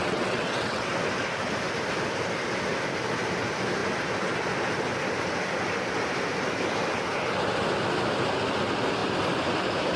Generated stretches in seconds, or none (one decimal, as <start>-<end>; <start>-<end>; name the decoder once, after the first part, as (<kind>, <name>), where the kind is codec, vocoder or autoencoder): 0.0-0.9 (vocoder, WaveNeXt)